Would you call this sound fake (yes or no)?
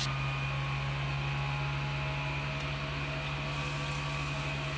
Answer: no